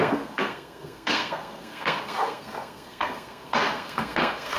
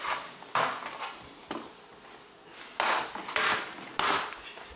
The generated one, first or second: first